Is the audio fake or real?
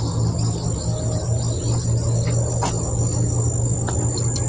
real